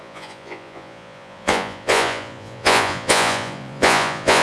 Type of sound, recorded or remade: remade